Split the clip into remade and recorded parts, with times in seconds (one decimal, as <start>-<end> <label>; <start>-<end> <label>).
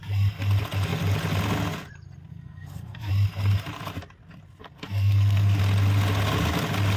0.0-2.3 recorded; 2.3-3.1 remade; 3.1-4.6 recorded; 4.6-5.6 remade; 5.6-7.0 recorded